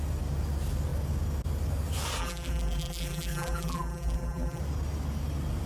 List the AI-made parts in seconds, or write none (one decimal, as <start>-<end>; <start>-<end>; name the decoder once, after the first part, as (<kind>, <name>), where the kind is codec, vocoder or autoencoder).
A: 2.2-4.6 (vocoder, BigVGAN v2)